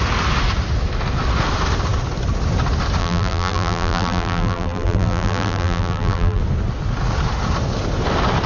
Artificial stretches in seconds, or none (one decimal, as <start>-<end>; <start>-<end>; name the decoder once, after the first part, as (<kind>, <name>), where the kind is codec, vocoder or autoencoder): 3.0-6.4 (vocoder, BigVGAN v2)